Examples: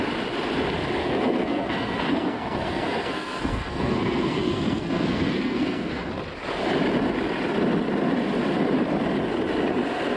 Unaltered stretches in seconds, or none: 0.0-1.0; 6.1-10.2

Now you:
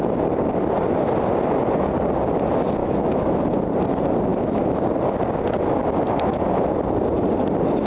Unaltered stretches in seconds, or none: 0.0-2.8; 3.4-4.3; 4.8-7.9

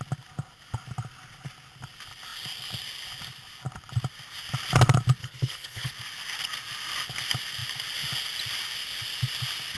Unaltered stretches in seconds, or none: 0.0-5.2; 5.9-9.8

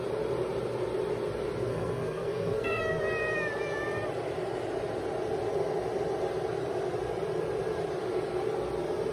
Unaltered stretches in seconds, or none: 0.0-1.7; 3.0-9.1

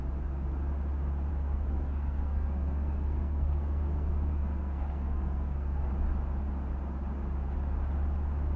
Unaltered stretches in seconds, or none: 0.0-1.3; 5.9-8.6

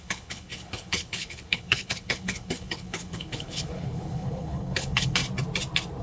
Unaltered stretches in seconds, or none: 5.2-6.0

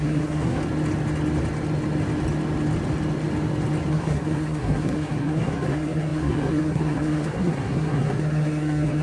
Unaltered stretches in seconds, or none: 0.6-3.9

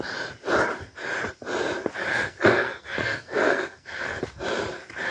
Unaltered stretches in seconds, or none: 0.0-2.1; 4.2-5.1